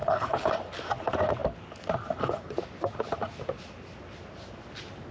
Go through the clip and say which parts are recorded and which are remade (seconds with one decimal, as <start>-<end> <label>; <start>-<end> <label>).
0.0-0.5 remade; 0.5-5.1 recorded